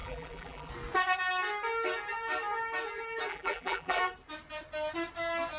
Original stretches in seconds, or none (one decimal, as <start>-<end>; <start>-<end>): 0.7-3.3; 4.0-5.6